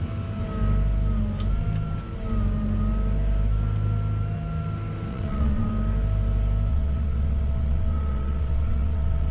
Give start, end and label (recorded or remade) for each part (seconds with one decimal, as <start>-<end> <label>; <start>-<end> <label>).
0.0-5.1 recorded; 5.1-5.7 remade; 5.7-6.7 recorded; 6.7-9.3 remade